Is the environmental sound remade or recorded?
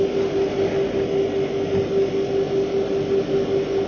recorded